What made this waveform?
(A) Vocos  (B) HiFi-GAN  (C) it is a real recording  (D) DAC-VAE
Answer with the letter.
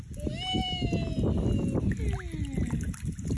C